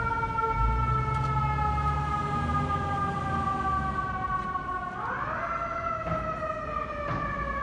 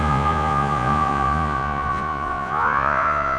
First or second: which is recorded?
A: first